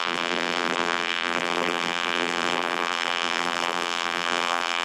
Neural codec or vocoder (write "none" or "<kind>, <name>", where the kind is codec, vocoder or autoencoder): vocoder, BigVGAN v2